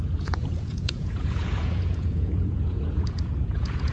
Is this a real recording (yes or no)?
no